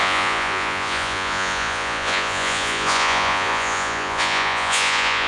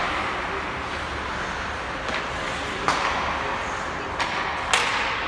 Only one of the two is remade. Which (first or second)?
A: first